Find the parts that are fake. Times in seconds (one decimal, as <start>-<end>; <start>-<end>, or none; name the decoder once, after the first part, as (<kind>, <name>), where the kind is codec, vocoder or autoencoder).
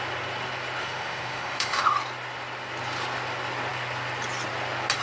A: 0.8-1.9 (autoencoder, DAC-VAE)